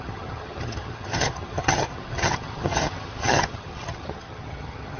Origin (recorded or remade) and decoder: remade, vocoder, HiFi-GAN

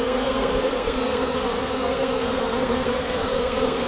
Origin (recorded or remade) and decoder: remade, codec, SNAC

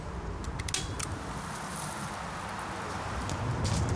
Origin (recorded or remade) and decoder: recorded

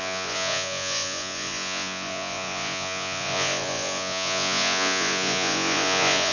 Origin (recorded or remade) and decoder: remade, vocoder, Vocos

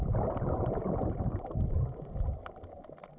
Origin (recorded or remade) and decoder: recorded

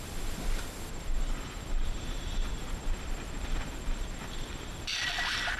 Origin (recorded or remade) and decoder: recorded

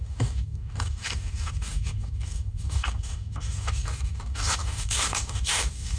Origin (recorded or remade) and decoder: remade, codec, DAC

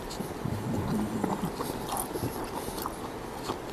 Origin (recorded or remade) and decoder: recorded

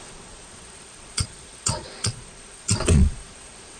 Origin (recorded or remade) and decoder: remade, vocoder, Vocos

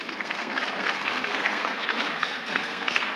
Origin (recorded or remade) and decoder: remade, codec, SNAC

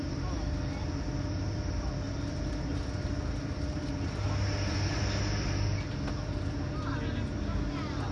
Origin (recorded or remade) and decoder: recorded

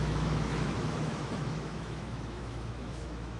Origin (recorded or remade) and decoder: remade, autoencoder, DAC-VAE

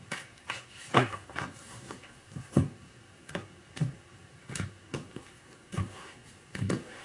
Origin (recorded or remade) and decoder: remade, codec, SNAC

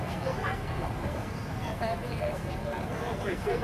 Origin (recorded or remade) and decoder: remade, codec, SNAC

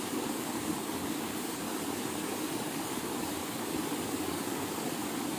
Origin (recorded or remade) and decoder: remade, codec, DAC